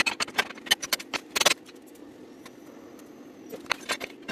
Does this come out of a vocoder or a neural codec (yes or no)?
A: no